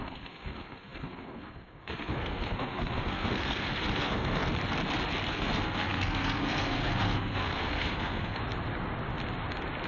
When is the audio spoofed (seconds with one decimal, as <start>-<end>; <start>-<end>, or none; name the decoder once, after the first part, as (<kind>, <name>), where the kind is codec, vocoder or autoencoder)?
0.0-4.4 (codec, SNAC); 5.3-8.4